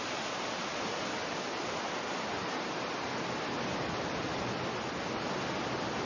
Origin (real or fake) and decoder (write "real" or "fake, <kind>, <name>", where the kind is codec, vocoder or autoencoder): real